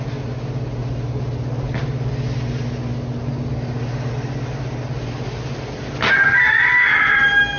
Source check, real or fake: real